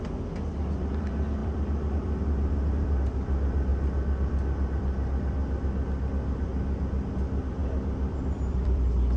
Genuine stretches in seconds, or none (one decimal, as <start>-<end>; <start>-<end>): 3.7-6.0; 6.5-7.1; 7.6-8.5